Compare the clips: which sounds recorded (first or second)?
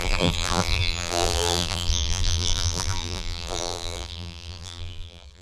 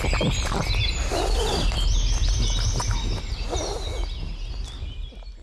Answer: second